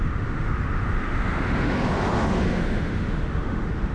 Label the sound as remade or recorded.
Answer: remade